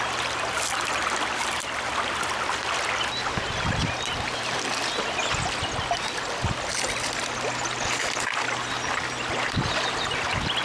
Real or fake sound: real